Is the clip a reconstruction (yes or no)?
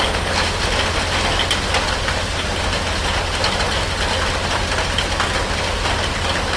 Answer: no